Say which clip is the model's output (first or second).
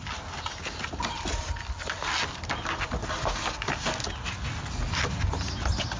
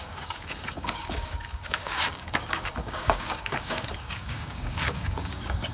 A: second